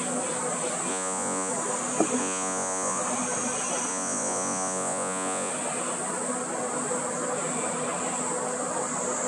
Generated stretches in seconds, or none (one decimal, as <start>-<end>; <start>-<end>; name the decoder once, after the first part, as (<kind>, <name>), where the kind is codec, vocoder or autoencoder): 0.9-1.5 (vocoder, Vocos); 2.2-3.0; 3.9-5.5